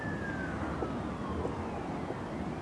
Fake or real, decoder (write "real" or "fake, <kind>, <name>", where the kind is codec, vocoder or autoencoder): real